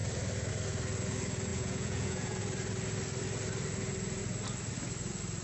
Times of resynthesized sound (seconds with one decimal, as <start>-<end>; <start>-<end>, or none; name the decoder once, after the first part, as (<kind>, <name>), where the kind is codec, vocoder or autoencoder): 1.5-2.4 (vocoder, Vocos)